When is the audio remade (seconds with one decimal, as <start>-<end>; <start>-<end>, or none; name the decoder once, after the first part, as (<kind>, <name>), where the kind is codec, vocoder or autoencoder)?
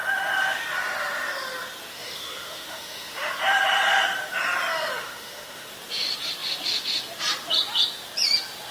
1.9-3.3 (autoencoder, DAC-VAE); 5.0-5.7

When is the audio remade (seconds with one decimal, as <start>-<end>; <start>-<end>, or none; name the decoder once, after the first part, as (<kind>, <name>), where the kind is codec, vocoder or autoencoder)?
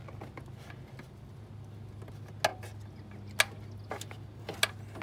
none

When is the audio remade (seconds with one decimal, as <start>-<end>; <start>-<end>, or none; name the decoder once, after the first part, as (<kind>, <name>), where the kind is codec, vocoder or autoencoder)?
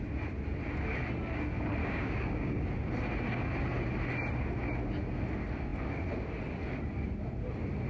1.8-2.6 (codec, DAC)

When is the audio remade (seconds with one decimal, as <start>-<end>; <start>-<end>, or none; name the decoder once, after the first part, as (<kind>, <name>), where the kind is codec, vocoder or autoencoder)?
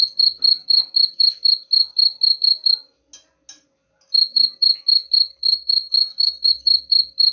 5.4-6.5 (codec, SNAC)